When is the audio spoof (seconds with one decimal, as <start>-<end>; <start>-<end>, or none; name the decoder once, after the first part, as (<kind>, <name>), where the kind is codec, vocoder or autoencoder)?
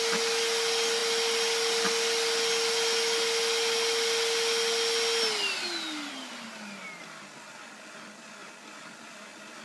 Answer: none